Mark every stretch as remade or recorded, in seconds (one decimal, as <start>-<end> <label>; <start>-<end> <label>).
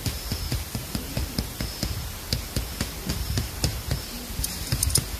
0.0-1.1 remade; 1.1-3.1 recorded; 3.1-3.7 remade; 3.7-4.4 recorded; 4.4-5.2 remade